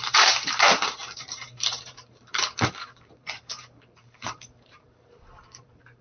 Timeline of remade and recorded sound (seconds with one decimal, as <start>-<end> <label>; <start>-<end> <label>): 0.0-6.0 remade